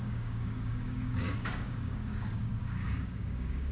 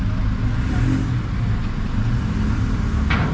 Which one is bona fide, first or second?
second